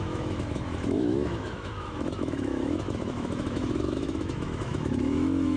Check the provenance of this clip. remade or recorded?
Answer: remade